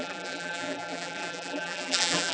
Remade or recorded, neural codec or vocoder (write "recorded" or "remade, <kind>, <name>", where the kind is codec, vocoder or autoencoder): remade, vocoder, BigVGAN v2